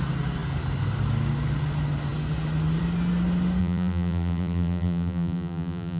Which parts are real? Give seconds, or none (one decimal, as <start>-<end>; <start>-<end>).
0.0-3.6